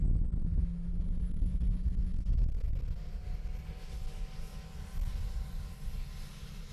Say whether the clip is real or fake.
real